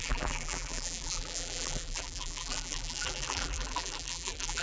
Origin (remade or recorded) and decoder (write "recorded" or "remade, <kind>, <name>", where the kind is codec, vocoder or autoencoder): remade, vocoder, BigVGAN v2